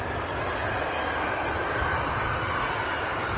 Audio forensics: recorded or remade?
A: recorded